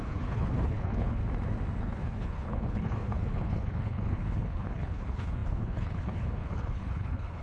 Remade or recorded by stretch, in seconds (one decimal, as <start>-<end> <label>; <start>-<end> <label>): 0.0-1.2 remade; 1.2-1.8 recorded; 1.8-7.4 remade